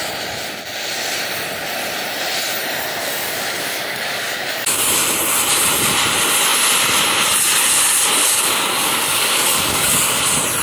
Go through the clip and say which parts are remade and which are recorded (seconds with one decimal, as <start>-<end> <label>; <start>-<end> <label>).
0.0-3.0 recorded; 3.0-4.9 remade; 4.9-8.2 recorded; 8.2-10.2 remade; 10.2-10.6 recorded